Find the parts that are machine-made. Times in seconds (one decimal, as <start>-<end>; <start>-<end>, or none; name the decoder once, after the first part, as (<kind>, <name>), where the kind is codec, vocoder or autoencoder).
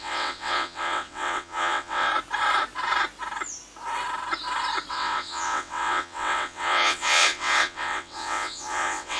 0.0-2.1 (vocoder, WaveNeXt); 4.9-9.2